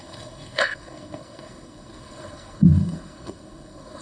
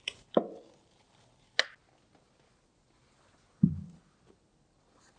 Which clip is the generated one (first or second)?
first